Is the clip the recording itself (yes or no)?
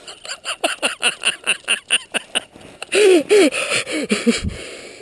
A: yes